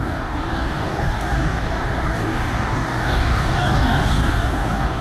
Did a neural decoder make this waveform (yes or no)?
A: yes